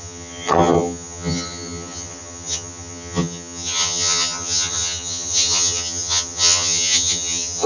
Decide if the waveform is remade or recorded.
remade